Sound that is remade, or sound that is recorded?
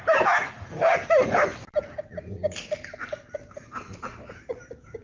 recorded